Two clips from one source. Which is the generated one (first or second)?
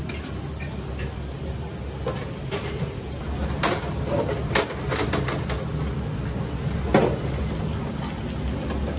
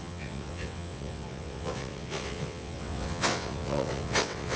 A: second